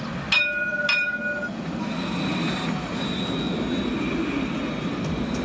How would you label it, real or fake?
real